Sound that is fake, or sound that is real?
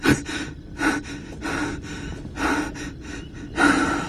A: real